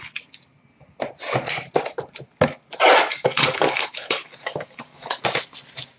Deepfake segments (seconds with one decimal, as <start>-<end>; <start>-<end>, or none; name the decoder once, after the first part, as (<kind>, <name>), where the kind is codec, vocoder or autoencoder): 3.1-5.2 (codec, DAC)